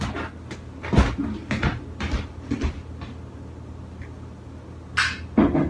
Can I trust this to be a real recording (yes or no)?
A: yes